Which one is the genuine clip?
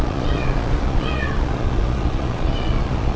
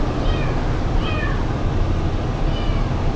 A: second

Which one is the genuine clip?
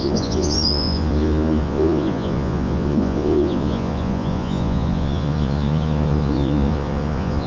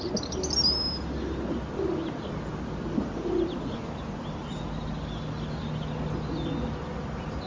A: second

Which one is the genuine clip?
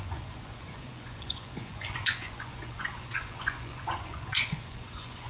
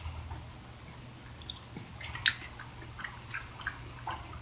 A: second